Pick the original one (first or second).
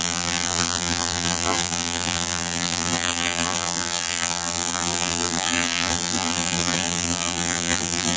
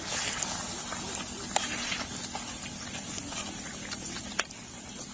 second